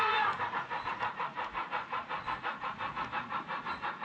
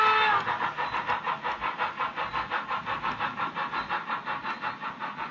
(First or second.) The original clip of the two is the second